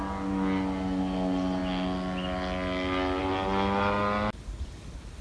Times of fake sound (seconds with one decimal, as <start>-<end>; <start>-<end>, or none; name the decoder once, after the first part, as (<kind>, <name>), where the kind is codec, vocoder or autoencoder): none